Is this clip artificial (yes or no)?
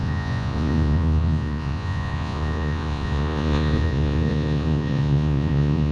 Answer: yes